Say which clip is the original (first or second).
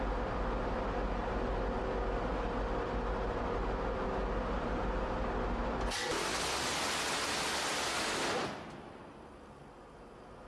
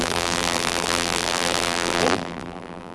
first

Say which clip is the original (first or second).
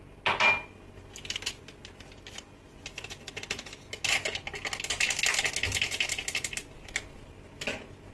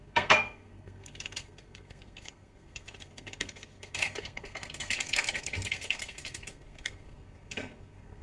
first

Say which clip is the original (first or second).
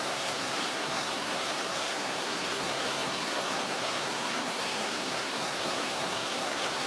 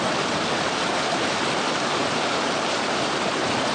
second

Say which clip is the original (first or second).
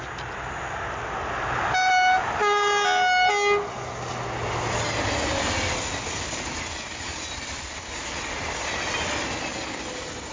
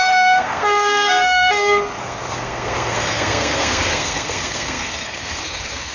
first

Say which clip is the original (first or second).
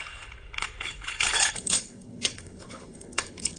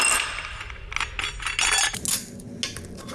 second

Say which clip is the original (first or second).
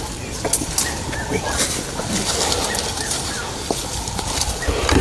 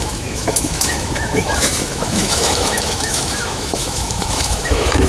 first